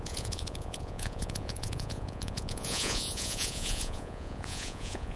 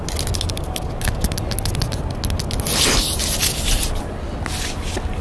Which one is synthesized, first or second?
first